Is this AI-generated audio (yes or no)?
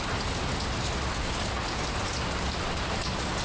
no